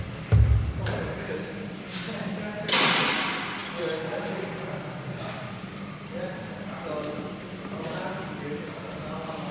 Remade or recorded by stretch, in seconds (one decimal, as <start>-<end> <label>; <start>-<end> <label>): 0.0-9.5 recorded